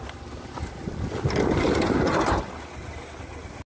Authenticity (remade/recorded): recorded